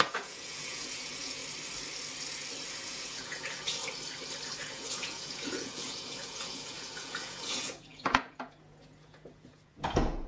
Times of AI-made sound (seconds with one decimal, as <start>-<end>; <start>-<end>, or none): 0.0-1.4; 2.7-3.8; 4.6-10.3